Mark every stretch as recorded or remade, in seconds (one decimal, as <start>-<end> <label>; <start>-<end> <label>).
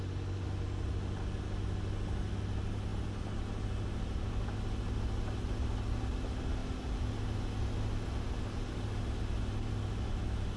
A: 0.0-10.6 recorded